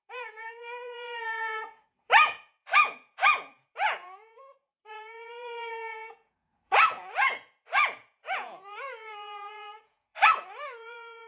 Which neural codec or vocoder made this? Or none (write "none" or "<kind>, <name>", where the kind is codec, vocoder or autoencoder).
vocoder, Vocos